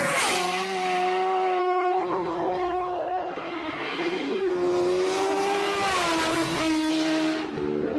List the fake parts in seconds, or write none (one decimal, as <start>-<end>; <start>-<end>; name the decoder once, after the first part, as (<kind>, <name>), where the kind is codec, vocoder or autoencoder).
1.6-4.5 (codec, SNAC); 6.3-6.9